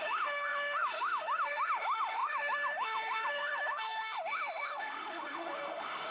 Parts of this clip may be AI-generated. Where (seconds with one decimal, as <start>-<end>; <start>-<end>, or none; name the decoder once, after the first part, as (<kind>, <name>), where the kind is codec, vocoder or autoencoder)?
0.0-6.1 (autoencoder, DAC-VAE)